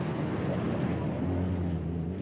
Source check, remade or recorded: recorded